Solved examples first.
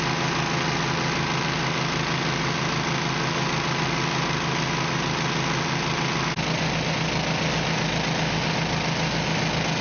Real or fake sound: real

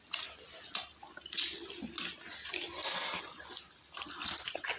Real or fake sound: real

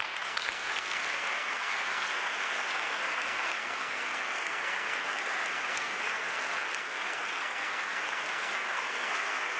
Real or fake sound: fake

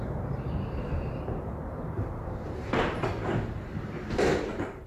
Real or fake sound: fake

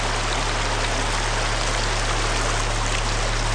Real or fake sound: real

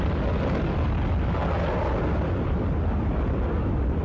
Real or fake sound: real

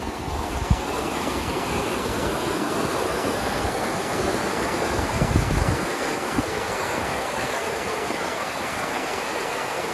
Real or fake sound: fake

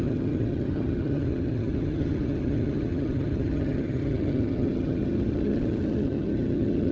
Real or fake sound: fake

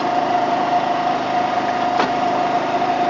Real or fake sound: real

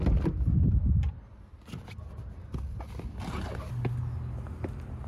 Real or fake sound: real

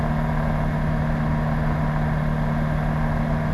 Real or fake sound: real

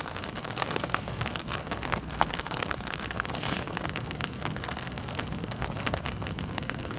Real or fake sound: fake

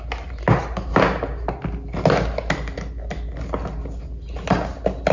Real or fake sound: real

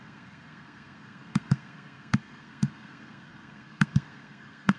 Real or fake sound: fake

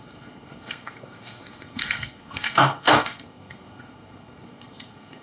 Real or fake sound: fake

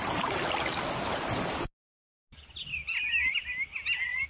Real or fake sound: real